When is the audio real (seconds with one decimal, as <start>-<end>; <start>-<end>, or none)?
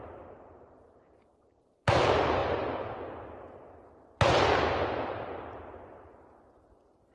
0.0-7.1